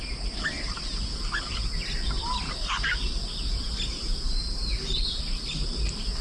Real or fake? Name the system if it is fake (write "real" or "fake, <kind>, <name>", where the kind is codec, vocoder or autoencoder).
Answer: real